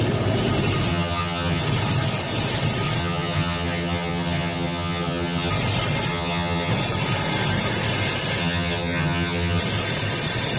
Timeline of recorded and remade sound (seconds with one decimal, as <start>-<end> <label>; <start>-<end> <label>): 0.0-0.9 recorded; 0.9-1.6 remade; 1.6-3.0 recorded; 3.0-5.5 remade; 5.5-6.1 recorded; 6.1-6.7 remade; 6.7-8.4 recorded; 8.4-9.6 remade; 9.6-10.6 recorded